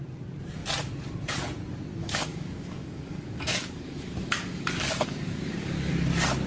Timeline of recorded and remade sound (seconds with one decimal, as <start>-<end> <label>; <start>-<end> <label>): 0.0-2.0 recorded; 2.0-5.9 remade; 5.9-6.5 recorded